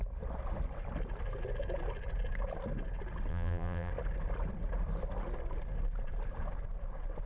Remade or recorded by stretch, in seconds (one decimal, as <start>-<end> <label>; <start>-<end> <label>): 0.0-3.3 recorded; 3.3-3.9 remade; 3.9-7.3 recorded

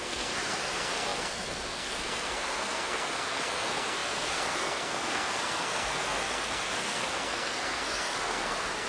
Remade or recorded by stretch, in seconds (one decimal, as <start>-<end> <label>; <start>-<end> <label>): 0.0-8.9 remade

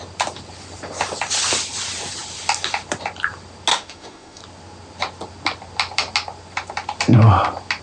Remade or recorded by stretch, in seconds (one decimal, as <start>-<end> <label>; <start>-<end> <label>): 0.0-3.7 recorded; 3.7-4.4 remade; 4.4-7.8 recorded

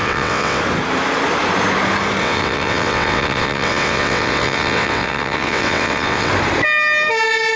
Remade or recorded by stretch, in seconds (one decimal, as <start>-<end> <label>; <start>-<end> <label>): 0.0-0.6 remade; 0.6-2.2 recorded; 2.2-6.3 remade; 6.3-7.6 recorded